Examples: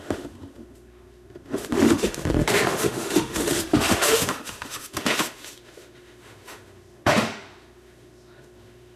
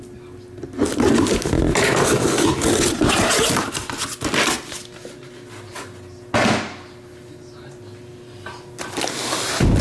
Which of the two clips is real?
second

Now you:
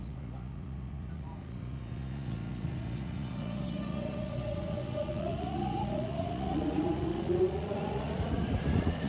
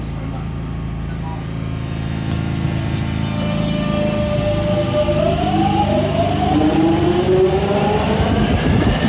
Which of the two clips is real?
second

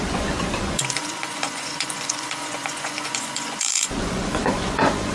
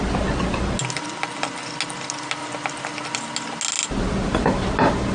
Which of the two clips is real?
second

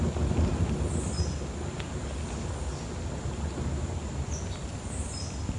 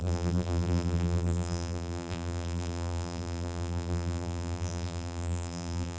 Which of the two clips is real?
first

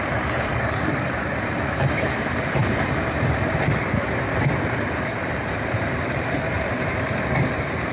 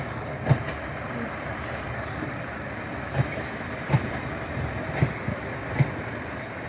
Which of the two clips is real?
second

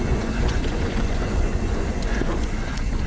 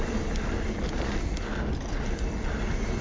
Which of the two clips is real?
second